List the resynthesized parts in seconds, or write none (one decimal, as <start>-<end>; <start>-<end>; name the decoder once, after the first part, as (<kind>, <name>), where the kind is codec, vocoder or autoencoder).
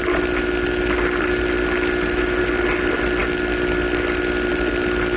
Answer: none